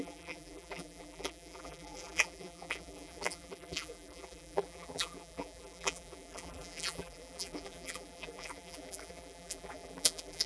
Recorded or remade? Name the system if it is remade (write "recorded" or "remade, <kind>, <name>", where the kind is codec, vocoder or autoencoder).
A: remade, vocoder, BigVGAN v2